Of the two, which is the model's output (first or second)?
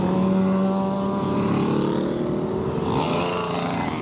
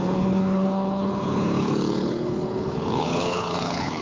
second